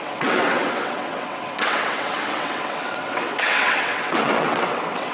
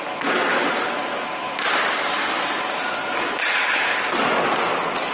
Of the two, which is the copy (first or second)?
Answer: first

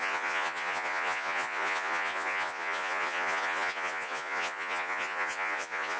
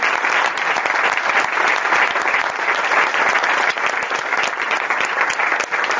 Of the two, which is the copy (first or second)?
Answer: first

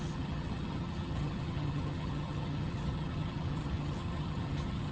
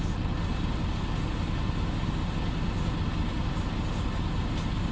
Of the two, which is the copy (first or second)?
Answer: first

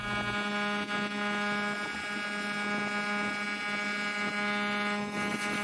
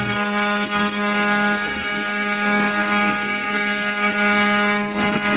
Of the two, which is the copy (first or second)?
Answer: second